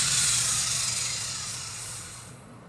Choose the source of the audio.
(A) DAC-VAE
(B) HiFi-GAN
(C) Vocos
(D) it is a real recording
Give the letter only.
C